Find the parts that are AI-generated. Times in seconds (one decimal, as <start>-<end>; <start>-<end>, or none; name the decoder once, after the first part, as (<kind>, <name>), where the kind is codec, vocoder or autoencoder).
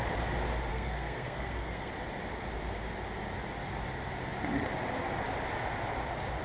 0.7-1.9 (codec, SNAC)